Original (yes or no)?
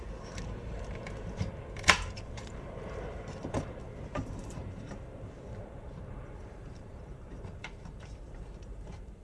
no